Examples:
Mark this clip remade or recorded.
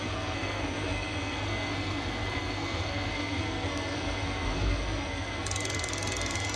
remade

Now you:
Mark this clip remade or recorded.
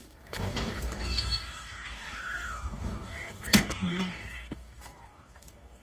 remade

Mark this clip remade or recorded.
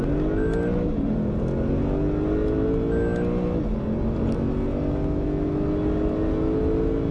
recorded